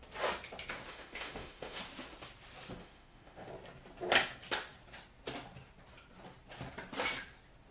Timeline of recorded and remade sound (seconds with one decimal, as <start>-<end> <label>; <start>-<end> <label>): 0.0-0.9 recorded; 0.9-1.8 remade; 1.8-2.8 recorded; 2.8-3.5 remade; 3.5-7.7 recorded